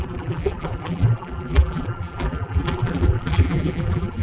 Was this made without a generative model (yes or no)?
no